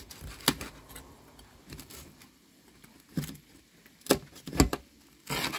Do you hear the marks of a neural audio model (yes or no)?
no